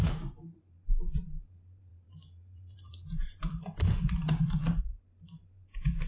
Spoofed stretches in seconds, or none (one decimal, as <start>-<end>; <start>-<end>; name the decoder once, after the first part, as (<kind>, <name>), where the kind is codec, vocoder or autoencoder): 0.0-6.1 (vocoder, BigVGAN v2)

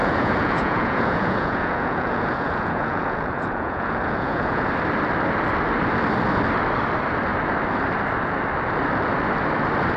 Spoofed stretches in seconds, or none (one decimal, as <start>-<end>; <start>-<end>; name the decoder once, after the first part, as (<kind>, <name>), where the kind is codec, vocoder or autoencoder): 0.0-4.7 (vocoder, Vocos)